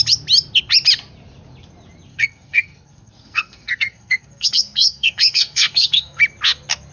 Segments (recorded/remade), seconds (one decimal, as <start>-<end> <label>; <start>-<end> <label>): 0.0-2.1 recorded; 2.1-6.2 remade; 6.2-6.9 recorded